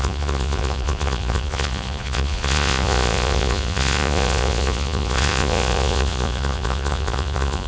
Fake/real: fake